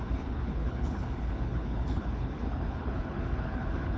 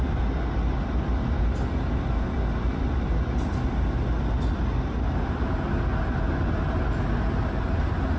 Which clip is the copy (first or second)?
first